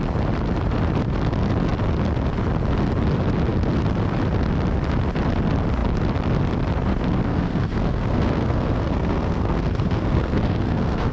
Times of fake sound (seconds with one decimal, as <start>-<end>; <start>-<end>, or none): 7.3-11.1